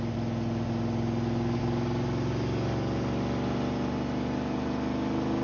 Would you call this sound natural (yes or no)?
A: yes